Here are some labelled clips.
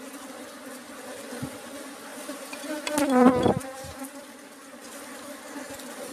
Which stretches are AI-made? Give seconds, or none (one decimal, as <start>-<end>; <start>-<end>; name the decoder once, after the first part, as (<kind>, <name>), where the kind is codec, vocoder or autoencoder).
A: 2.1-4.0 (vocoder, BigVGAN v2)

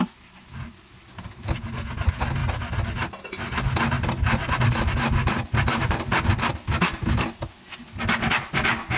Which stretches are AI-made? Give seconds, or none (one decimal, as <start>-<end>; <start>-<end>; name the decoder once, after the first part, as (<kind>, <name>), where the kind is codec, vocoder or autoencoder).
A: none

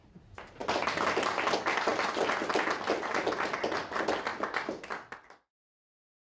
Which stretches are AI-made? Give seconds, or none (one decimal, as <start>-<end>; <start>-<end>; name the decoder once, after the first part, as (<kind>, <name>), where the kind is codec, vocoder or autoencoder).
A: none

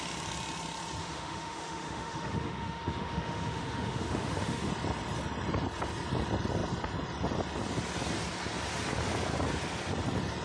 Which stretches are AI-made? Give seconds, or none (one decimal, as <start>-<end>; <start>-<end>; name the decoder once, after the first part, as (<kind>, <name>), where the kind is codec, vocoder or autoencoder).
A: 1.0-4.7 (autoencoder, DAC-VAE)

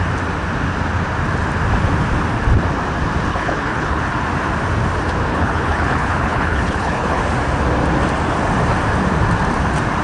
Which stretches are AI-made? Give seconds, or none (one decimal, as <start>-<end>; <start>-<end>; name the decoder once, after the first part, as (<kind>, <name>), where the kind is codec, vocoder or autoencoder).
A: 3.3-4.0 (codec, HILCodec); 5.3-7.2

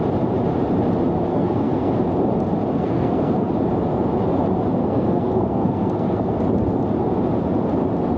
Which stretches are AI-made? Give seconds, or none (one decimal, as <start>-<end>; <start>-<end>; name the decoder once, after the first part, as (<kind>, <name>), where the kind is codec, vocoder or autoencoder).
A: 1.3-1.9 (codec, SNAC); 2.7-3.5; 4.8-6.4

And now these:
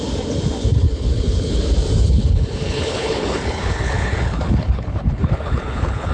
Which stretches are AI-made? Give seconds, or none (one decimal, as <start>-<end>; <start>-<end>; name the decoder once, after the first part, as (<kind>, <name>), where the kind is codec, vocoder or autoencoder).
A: 0.6-1.6 (codec, HILCodec); 2.0-6.1

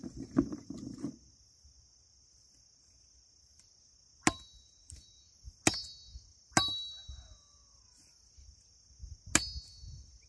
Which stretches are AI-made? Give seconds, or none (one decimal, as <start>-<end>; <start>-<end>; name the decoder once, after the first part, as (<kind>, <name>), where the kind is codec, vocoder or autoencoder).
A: none